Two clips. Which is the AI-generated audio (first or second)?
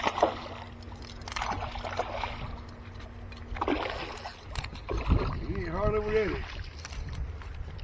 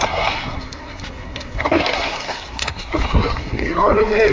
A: second